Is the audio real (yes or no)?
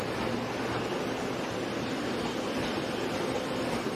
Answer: no